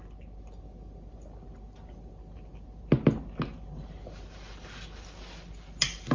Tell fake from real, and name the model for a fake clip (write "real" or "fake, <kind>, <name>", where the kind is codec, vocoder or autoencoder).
real